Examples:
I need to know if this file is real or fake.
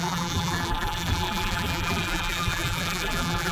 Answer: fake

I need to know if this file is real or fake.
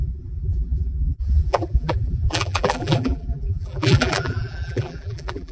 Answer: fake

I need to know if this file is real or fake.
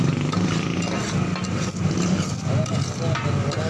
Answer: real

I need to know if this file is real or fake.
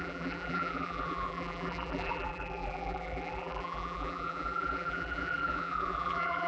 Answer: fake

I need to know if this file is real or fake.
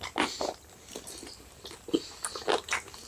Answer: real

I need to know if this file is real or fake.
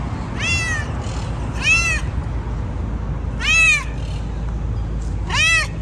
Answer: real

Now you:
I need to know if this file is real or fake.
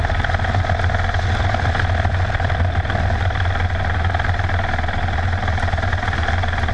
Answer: real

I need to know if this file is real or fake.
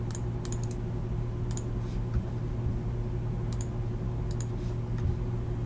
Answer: real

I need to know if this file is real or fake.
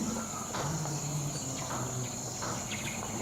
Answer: real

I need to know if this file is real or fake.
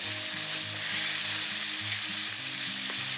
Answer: fake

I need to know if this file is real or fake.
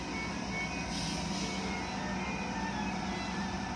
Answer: real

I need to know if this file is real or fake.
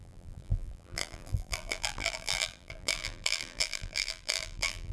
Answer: fake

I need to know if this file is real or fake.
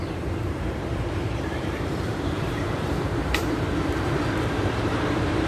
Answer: fake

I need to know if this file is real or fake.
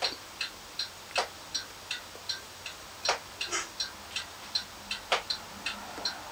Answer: real